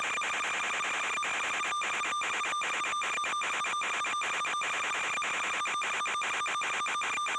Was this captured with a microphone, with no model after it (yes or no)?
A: yes